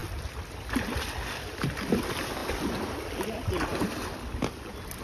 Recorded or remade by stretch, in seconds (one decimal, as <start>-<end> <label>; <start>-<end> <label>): 0.0-5.0 recorded